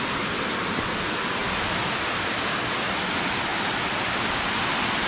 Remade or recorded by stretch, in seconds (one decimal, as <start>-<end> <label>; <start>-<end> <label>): 0.0-5.1 recorded